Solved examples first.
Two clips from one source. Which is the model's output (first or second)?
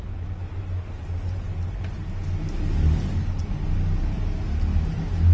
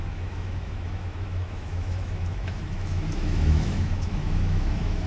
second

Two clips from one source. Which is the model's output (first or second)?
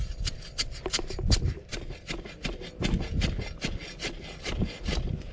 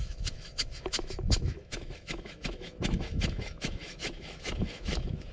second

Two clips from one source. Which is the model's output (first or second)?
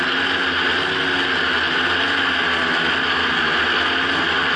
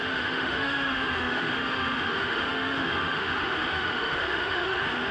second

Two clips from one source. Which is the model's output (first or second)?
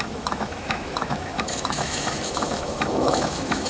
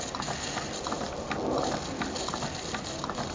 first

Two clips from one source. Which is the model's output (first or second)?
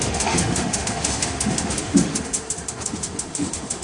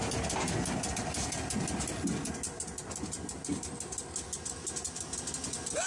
first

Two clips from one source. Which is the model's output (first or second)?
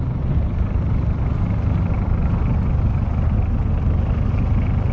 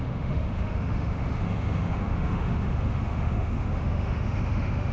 second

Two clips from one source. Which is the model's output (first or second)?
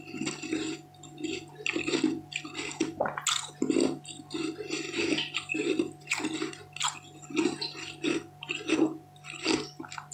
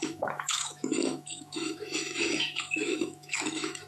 second